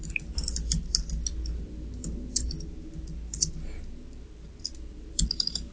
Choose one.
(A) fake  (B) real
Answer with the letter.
B